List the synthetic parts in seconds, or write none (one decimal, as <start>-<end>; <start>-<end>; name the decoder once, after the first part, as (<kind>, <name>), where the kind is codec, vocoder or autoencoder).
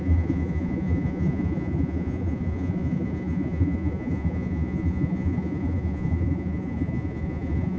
0.0-7.8 (vocoder, Vocos)